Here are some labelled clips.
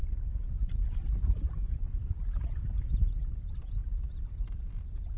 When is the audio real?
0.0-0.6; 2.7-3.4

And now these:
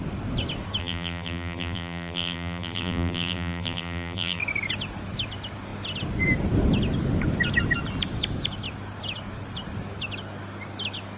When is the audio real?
0.0-0.8; 4.4-11.2

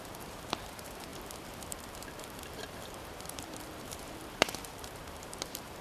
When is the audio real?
none

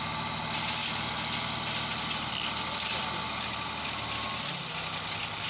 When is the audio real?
0.0-5.5

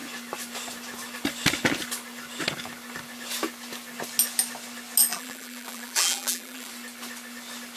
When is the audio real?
0.0-5.1; 6.7-7.8